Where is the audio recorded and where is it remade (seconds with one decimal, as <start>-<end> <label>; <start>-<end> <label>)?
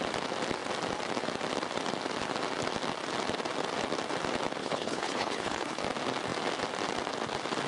0.0-4.6 recorded; 4.6-5.8 remade; 5.8-7.7 recorded